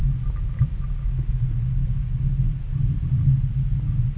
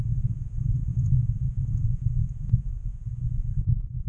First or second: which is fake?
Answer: second